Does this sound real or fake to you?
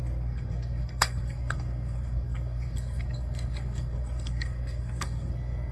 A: fake